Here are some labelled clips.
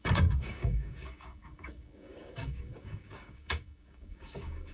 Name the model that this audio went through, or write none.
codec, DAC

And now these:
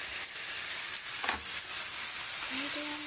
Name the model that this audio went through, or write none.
none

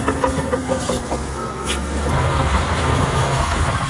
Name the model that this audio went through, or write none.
codec, SNAC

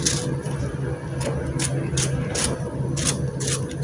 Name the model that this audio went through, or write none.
none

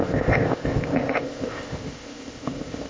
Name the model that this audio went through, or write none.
codec, ZipCodec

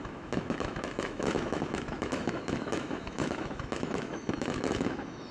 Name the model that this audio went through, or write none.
autoencoder, DAC-VAE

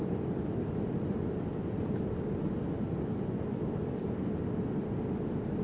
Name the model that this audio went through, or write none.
none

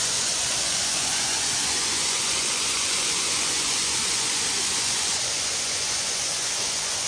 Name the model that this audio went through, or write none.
vocoder, Vocos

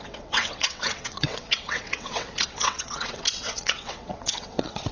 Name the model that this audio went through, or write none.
vocoder, WaveNeXt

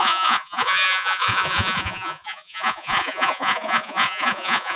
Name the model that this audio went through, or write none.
vocoder, Vocos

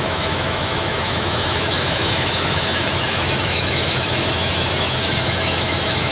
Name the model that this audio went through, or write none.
autoencoder, DAC-VAE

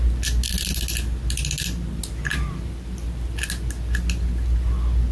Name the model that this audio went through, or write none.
none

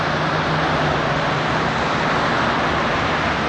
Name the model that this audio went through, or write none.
none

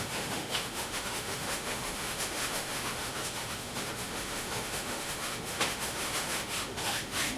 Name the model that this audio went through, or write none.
autoencoder, DAC-VAE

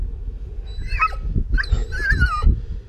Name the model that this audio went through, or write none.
none